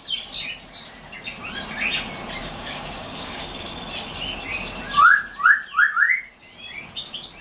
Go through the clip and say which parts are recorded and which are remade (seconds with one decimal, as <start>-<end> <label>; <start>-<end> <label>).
0.0-2.4 recorded; 2.4-3.4 remade; 3.4-7.4 recorded